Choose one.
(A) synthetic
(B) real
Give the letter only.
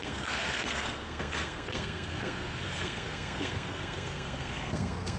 A